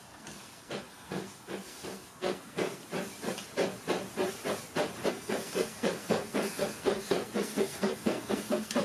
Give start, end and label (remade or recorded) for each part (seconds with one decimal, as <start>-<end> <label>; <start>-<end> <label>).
0.0-2.8 remade; 2.8-5.1 recorded; 5.1-8.8 remade